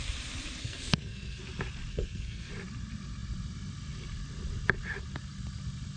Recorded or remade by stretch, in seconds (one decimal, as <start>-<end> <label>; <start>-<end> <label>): 0.0-0.6 recorded; 0.6-1.4 remade; 1.4-1.9 recorded; 1.9-2.5 remade; 2.5-6.0 recorded